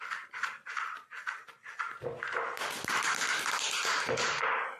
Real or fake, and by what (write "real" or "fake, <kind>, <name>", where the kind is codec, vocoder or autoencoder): fake, vocoder, BigVGAN v2